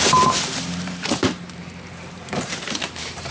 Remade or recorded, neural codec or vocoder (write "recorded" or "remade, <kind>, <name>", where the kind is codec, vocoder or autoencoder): remade, vocoder, BigVGAN v2